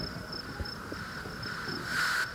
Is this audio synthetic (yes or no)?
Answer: no